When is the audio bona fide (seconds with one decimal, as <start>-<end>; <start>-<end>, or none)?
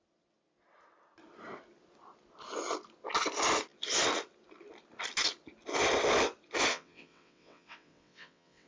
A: 0.0-6.7